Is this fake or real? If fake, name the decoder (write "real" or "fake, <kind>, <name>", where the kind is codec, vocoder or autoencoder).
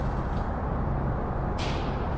real